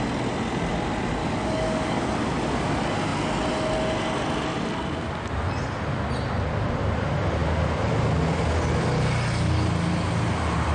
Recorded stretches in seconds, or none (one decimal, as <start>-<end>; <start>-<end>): 0.0-1.2; 2.0-10.7